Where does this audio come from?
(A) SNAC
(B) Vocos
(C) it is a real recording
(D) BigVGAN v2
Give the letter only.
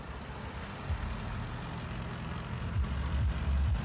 C